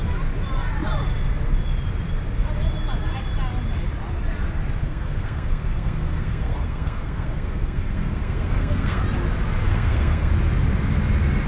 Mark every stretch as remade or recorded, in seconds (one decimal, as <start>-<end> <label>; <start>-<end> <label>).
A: 0.0-4.8 recorded; 4.8-9.0 remade; 9.0-9.7 recorded; 9.7-10.3 remade; 10.3-11.5 recorded